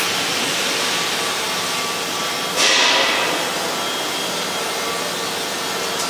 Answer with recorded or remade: recorded